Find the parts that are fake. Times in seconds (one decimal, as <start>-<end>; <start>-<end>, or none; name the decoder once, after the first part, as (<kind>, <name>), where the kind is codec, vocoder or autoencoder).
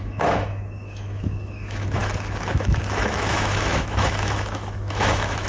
0.0-5.5 (autoencoder, DAC-VAE)